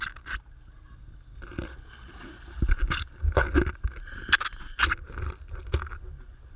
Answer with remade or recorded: recorded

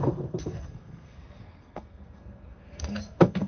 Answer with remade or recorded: remade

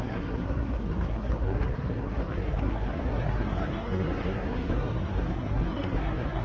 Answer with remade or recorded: remade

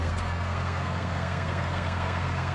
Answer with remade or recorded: remade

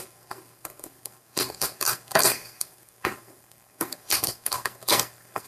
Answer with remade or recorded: remade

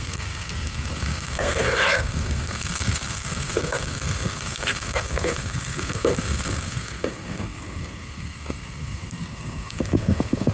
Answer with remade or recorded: remade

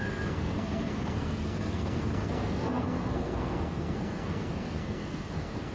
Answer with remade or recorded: remade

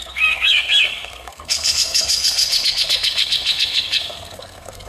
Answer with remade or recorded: remade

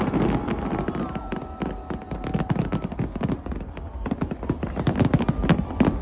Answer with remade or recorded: recorded